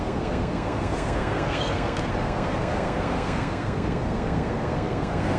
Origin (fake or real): fake